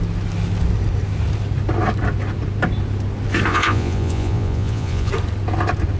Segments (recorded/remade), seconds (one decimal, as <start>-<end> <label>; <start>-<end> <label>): 0.0-3.5 recorded; 3.5-5.1 remade; 5.1-6.0 recorded

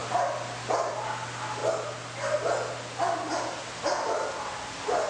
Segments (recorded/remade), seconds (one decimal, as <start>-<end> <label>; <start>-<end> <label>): 0.0-5.1 recorded